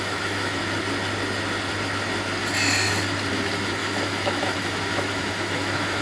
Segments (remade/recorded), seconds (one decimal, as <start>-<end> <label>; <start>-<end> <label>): 0.0-0.6 remade; 0.6-3.3 recorded; 3.3-6.0 remade